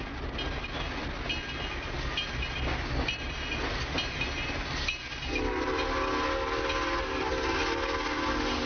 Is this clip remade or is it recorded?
recorded